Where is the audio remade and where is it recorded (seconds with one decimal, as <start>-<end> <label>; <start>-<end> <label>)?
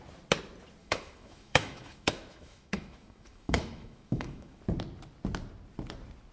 0.0-0.8 recorded; 0.8-4.6 remade; 4.6-6.3 recorded